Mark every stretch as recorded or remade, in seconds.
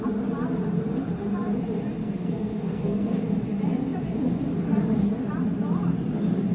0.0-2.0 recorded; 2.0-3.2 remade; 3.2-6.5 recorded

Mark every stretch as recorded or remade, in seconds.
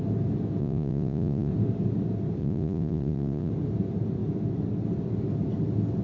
0.0-0.6 recorded; 0.6-1.5 remade; 1.5-2.4 recorded; 2.4-3.5 remade; 3.5-6.0 recorded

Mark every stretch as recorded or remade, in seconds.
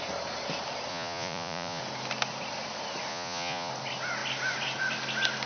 0.0-0.9 recorded; 0.9-1.8 remade; 1.8-3.1 recorded; 3.1-3.7 remade; 3.7-5.5 recorded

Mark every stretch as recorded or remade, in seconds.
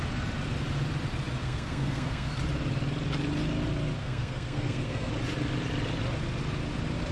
0.0-1.4 recorded; 1.4-2.3 remade; 2.3-4.0 recorded; 4.0-5.1 remade; 5.1-7.1 recorded